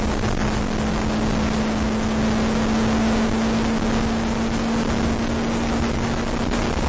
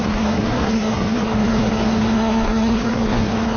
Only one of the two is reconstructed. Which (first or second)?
second